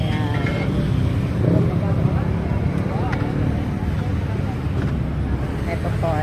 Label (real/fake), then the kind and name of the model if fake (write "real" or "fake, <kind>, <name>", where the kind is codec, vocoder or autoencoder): real